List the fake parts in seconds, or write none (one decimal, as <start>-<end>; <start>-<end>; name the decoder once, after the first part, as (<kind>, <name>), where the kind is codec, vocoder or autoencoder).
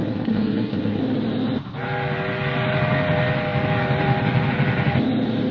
0.0-1.0 (codec, SNAC)